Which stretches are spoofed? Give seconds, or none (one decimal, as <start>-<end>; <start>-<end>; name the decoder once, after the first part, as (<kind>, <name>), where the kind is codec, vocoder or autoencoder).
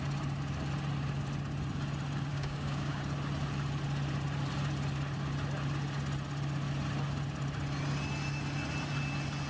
2.3-3.0 (codec, DAC)